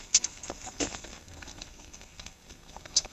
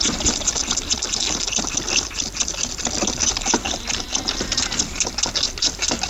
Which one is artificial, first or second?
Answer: first